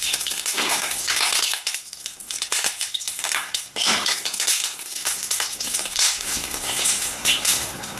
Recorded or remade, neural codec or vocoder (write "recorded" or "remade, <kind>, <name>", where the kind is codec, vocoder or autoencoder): remade, codec, SNAC